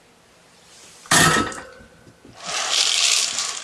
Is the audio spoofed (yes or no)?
no